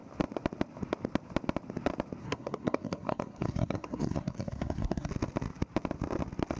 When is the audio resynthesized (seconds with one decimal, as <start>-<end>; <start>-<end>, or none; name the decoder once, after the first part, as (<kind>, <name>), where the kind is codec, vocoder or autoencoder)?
2.2-5.1 (codec, SNAC)